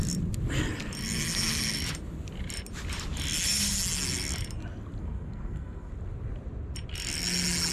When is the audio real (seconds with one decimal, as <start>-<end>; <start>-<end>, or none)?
0.0-5.0; 5.9-7.7